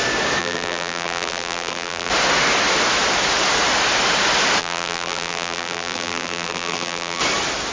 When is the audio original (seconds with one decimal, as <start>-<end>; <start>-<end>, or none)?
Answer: 0.0-0.4; 2.1-4.6; 7.2-7.7